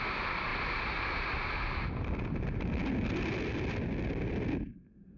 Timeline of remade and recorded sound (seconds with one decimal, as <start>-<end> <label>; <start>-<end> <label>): 0.0-5.2 recorded